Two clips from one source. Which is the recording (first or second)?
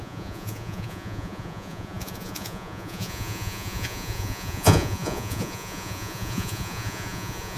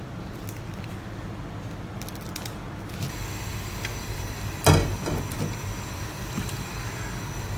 second